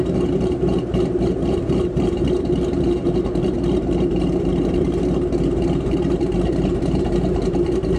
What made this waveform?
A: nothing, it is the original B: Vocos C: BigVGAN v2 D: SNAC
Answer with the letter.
C